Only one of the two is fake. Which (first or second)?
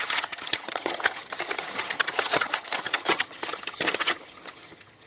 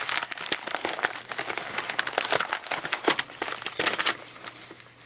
first